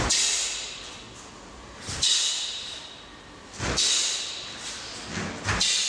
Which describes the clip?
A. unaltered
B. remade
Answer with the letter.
A